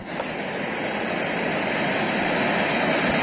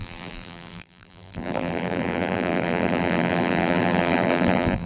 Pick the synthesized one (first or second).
second